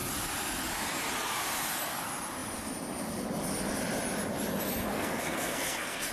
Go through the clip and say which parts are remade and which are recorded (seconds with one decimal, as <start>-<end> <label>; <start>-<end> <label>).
0.0-4.9 recorded; 4.9-6.1 remade